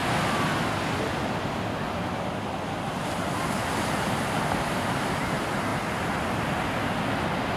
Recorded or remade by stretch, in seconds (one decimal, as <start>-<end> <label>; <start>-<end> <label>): 0.0-7.6 recorded